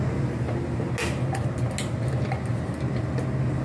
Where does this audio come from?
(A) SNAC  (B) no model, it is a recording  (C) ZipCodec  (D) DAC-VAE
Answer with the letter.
B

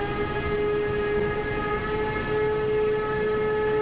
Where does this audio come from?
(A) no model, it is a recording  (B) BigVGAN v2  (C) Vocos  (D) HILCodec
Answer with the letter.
A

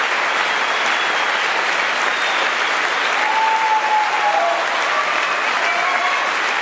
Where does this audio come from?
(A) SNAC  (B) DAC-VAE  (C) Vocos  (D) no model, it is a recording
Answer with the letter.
D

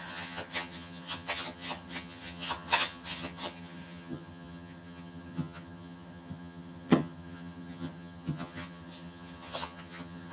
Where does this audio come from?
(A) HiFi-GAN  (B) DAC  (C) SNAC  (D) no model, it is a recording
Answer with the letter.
A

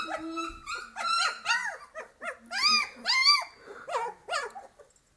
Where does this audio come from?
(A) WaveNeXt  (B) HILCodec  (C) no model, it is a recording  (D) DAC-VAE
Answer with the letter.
C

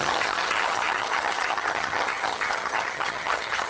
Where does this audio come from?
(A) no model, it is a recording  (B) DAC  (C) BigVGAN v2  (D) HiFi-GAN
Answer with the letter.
D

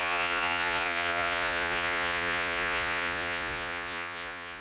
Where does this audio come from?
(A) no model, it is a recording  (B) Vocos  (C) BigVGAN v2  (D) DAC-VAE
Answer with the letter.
B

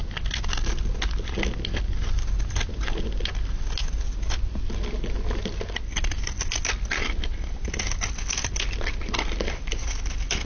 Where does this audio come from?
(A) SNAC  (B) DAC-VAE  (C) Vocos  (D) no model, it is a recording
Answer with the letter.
D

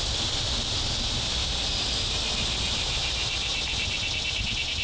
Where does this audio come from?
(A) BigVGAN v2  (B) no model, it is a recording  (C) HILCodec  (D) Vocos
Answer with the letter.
B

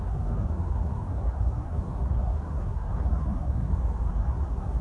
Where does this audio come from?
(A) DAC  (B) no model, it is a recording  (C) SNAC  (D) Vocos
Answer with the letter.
C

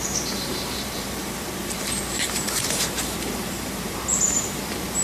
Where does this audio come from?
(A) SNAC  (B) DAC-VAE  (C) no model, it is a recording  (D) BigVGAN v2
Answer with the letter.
D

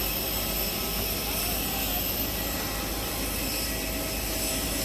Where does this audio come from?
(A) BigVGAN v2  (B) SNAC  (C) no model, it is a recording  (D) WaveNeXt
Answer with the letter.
C